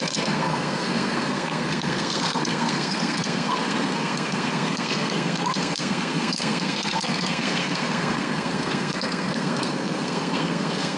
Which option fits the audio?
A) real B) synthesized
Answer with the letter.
B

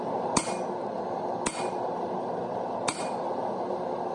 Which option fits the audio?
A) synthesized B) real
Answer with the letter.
B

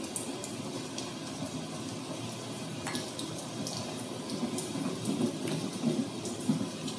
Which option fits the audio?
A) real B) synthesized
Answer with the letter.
A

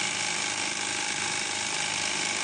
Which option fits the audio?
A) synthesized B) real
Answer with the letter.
B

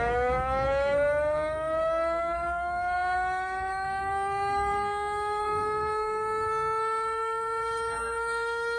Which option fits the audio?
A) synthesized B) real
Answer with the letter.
A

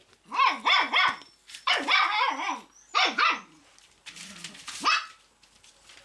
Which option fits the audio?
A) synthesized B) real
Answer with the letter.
B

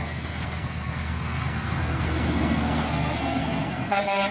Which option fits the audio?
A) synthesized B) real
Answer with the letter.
A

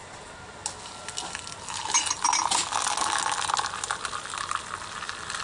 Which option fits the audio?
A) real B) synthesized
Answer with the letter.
A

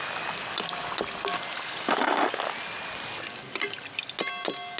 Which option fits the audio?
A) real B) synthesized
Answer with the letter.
A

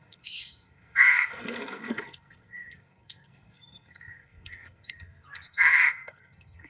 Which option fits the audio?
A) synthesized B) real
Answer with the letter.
A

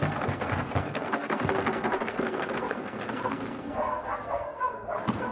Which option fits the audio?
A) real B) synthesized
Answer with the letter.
B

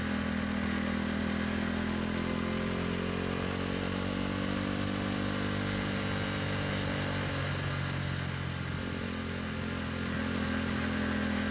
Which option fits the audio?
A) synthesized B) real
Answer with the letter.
B